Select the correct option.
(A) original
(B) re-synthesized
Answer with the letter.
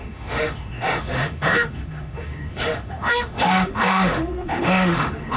B